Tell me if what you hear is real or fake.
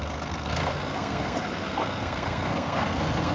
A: fake